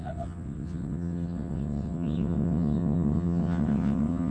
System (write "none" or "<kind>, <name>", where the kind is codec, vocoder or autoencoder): vocoder, WaveNeXt